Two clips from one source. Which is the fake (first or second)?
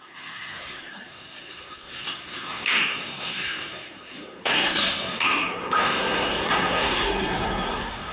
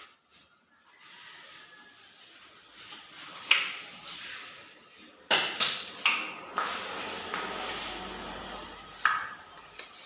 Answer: first